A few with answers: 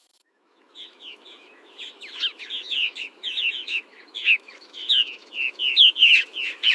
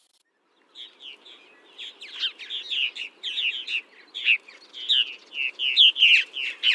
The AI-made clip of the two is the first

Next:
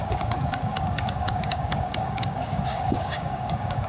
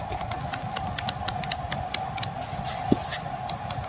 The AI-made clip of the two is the first